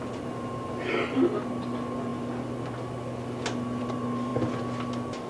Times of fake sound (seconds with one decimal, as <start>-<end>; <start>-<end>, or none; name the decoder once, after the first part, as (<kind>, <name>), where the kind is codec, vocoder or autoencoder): none